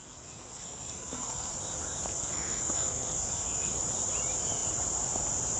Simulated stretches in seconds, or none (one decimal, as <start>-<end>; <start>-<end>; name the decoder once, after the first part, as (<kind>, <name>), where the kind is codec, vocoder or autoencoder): 0.0-1.5 (codec, SNAC); 2.1-3.8